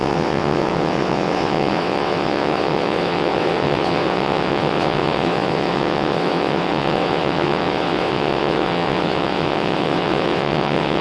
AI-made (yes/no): yes